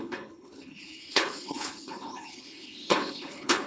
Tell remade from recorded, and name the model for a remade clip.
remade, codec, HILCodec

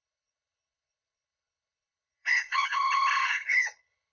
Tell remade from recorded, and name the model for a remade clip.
remade, codec, HILCodec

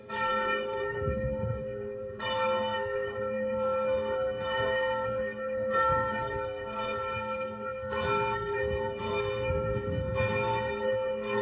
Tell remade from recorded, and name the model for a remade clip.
remade, codec, SNAC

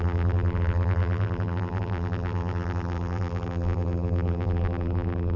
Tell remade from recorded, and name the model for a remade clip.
remade, vocoder, BigVGAN v2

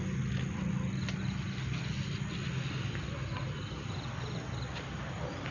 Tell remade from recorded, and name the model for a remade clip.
recorded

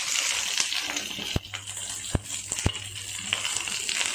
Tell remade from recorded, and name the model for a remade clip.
recorded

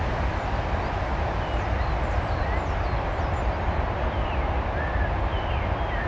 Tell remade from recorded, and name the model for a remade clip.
recorded